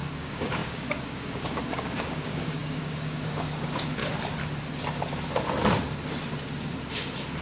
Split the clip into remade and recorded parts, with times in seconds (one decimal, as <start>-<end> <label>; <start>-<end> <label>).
0.0-4.0 remade; 4.0-7.4 recorded